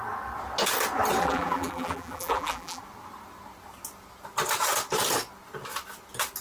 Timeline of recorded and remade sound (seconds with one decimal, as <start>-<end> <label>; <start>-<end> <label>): 0.0-1.2 recorded; 1.2-2.8 remade; 2.8-6.4 recorded